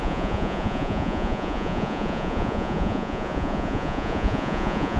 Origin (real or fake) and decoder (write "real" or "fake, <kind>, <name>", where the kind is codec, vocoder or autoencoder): fake, vocoder, Vocos